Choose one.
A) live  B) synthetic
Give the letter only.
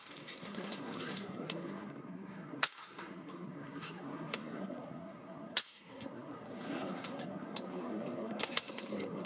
B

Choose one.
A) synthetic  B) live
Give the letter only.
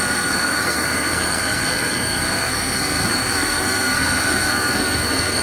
A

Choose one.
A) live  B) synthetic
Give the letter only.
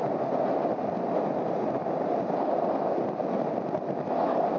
A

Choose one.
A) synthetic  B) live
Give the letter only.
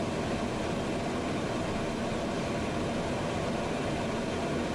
B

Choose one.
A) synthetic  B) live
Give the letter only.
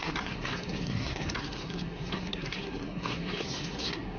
A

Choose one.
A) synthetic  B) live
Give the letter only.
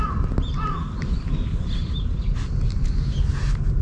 B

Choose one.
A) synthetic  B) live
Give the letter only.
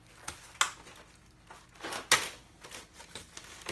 B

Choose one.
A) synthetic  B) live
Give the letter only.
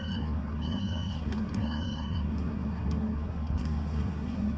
A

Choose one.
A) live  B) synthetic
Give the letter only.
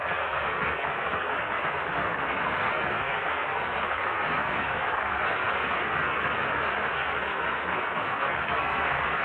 B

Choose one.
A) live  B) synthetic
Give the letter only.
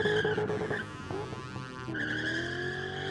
A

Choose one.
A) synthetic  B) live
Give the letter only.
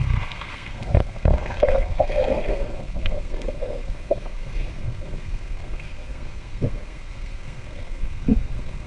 A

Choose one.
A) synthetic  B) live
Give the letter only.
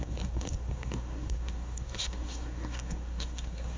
A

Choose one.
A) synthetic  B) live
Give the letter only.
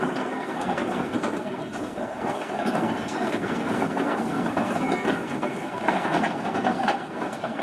A